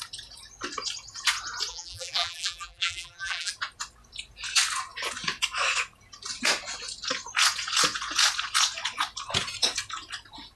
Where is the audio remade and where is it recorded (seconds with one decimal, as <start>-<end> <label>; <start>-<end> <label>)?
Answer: 0.0-1.7 recorded; 1.7-3.5 remade; 3.5-10.6 recorded